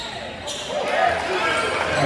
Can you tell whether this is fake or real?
real